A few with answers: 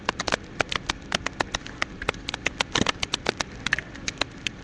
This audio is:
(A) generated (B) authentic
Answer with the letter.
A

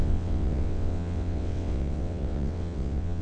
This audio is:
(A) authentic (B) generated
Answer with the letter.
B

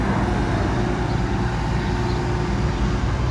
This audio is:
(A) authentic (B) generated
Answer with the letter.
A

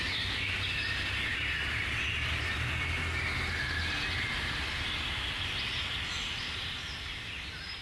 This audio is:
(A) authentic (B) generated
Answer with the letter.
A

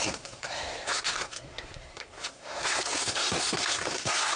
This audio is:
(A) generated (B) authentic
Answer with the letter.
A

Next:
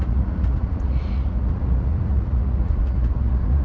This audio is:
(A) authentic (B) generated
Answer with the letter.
B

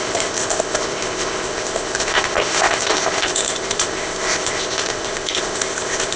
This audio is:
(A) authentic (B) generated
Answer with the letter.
B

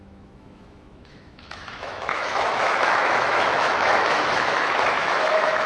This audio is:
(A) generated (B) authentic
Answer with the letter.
A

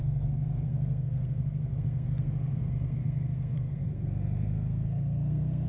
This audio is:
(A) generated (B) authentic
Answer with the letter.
A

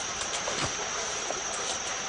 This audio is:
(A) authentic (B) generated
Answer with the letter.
A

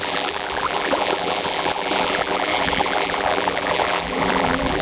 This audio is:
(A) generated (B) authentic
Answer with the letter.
A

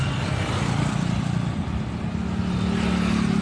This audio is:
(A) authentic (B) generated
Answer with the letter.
A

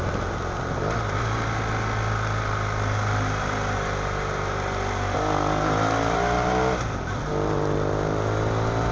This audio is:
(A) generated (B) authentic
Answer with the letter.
B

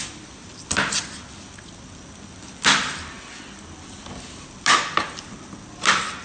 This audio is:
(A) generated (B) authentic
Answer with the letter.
B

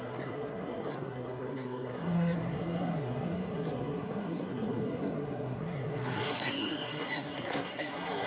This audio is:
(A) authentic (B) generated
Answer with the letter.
B